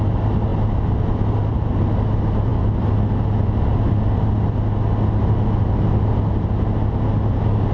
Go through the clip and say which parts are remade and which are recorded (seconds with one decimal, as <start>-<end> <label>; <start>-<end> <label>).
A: 0.0-7.7 recorded